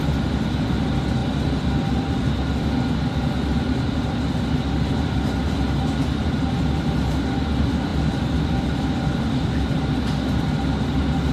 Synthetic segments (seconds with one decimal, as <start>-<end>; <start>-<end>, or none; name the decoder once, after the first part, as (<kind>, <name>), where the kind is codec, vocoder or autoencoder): none